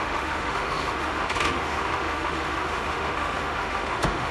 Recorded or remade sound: remade